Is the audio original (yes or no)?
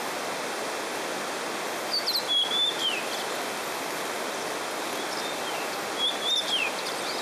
yes